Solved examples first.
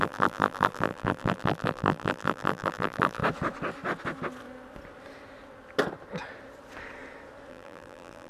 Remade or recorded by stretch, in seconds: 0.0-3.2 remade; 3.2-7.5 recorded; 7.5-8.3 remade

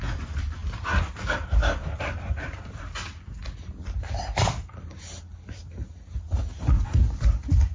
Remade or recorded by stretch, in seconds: 0.0-0.6 recorded; 0.6-1.1 remade; 1.1-1.6 recorded; 1.6-2.8 remade; 2.8-7.7 recorded

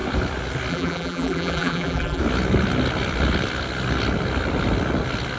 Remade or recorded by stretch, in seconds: 0.0-0.7 recorded; 0.7-2.2 remade; 2.2-5.4 recorded

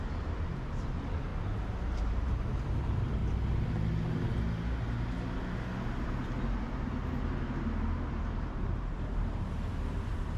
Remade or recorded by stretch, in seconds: 0.0-1.3 remade; 1.3-2.0 recorded; 2.0-3.2 remade; 3.2-7.9 recorded; 7.9-10.4 remade

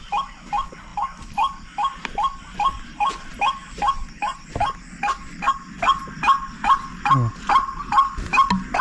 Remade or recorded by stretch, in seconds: 0.0-0.9 recorded; 0.9-4.5 remade; 4.5-8.8 recorded

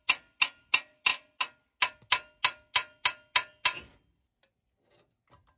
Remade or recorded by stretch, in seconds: 0.0-5.6 recorded

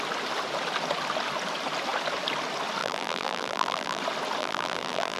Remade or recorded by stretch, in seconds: 0.0-2.8 recorded; 2.8-4.0 remade; 4.0-4.4 recorded; 4.4-5.2 remade